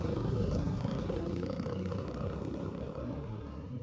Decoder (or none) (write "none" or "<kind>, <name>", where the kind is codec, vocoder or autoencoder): codec, SNAC